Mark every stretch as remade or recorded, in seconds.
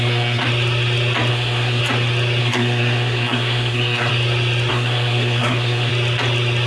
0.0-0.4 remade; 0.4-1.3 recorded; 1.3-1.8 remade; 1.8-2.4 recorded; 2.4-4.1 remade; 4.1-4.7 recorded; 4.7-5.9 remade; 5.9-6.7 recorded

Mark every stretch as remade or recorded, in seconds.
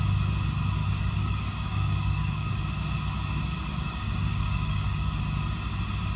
0.0-0.8 recorded; 0.8-2.6 remade; 2.6-3.7 recorded; 3.7-5.1 remade; 5.1-6.2 recorded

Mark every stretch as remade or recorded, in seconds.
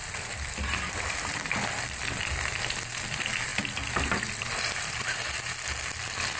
0.0-2.6 remade; 2.6-3.5 recorded; 3.5-5.5 remade; 5.5-6.4 recorded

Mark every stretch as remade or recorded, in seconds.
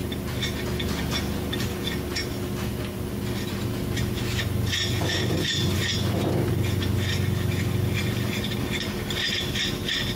0.0-1.6 recorded; 1.6-2.7 remade; 2.7-6.9 recorded; 6.9-10.2 remade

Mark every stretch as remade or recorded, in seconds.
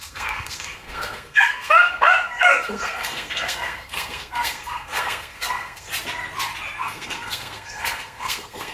0.0-5.9 remade; 5.9-6.8 recorded; 6.8-8.7 remade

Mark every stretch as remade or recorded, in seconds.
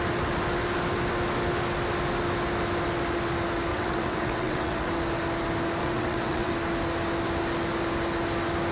0.0-3.7 recorded; 3.7-4.9 remade; 4.9-5.8 recorded; 5.8-6.5 remade; 6.5-8.7 recorded